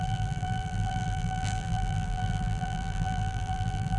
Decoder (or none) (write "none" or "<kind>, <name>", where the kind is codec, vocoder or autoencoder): vocoder, BigVGAN v2